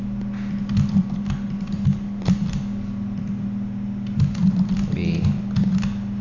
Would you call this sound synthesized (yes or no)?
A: no